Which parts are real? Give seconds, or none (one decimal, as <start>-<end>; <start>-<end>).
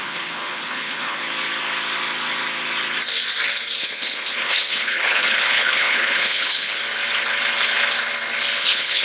1.2-3.8; 6.8-8.6